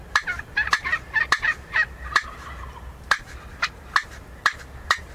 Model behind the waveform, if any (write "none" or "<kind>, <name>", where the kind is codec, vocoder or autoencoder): vocoder, BigVGAN v2